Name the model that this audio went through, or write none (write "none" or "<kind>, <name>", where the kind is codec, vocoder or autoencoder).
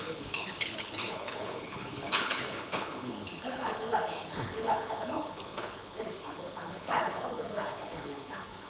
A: codec, HILCodec